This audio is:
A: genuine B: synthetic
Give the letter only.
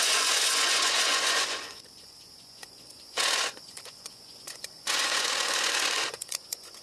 B